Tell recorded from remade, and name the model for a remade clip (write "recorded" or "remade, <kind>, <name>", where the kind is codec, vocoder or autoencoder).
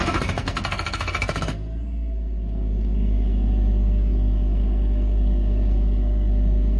remade, codec, SNAC